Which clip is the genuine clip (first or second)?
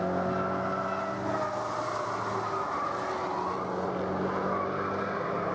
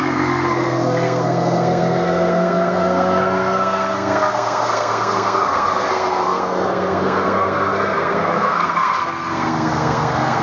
first